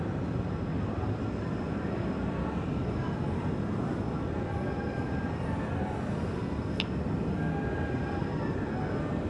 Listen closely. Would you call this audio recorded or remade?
recorded